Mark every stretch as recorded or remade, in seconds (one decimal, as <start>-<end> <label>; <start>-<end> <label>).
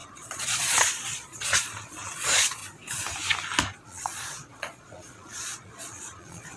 0.0-2.6 remade; 2.6-3.8 recorded; 3.8-6.6 remade